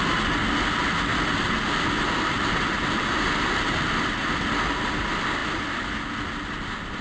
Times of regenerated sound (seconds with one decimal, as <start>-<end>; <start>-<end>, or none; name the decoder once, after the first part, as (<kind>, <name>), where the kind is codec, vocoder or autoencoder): 1.1-4.4 (vocoder, BigVGAN v2)